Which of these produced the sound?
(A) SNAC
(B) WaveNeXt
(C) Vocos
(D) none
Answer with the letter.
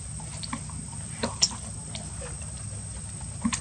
D